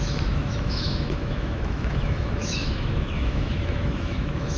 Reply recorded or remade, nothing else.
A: remade